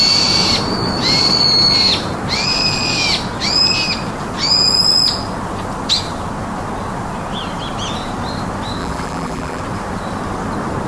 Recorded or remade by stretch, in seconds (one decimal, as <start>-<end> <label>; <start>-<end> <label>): 0.0-8.8 recorded; 8.8-9.6 remade; 9.6-10.9 recorded